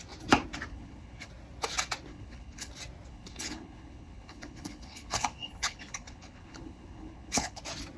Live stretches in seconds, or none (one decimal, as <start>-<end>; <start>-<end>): 0.0-0.7; 1.3-2.1; 2.7-3.1; 7.6-8.0